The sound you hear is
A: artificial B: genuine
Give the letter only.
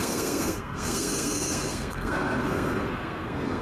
A